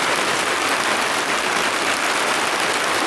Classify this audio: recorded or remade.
recorded